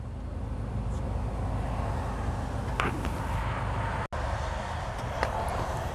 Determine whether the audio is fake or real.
real